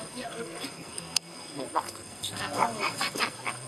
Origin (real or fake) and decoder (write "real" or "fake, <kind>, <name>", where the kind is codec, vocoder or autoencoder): fake, codec, SNAC